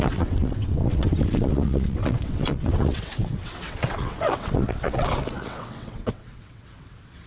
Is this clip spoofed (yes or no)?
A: yes